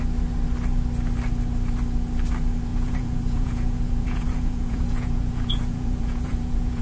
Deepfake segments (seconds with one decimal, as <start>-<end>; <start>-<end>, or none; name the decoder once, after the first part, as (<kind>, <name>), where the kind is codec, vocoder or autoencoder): 2.7-6.8 (vocoder, Vocos)